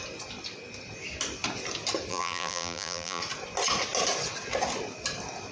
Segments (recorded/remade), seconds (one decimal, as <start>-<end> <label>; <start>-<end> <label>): 0.0-2.1 recorded; 2.1-3.2 remade; 3.2-5.5 recorded